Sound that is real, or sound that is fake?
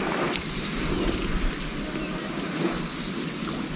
real